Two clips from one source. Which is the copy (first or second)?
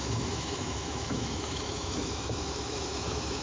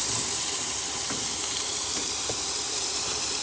first